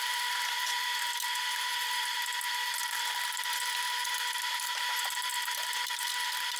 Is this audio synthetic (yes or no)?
yes